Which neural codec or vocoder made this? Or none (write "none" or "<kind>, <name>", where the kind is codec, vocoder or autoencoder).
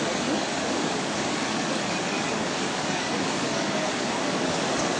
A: codec, DAC